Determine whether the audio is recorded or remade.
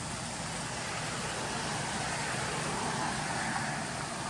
recorded